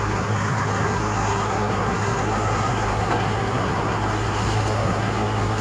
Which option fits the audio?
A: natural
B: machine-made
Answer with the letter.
B